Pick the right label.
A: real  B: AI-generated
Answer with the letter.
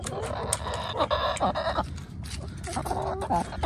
A